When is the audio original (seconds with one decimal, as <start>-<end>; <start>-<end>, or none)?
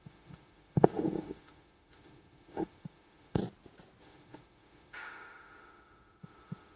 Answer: 3.4-4.0